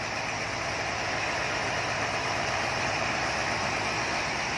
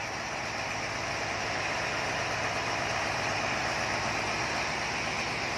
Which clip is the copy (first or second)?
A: first